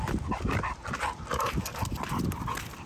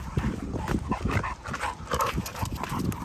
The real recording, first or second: first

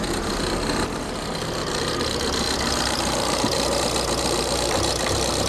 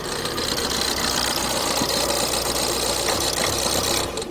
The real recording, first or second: second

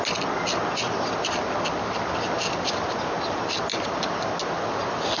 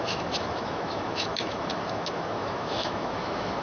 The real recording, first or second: first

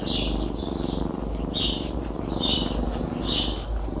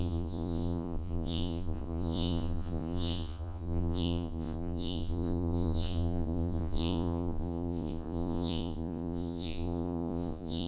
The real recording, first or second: first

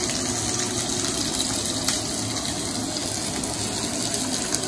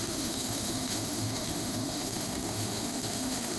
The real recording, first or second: first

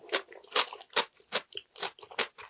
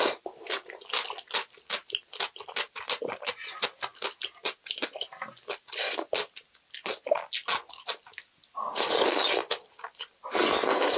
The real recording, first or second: second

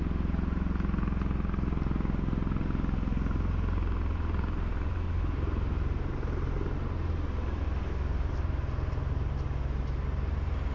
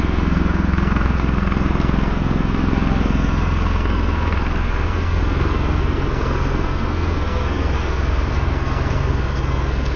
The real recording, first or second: first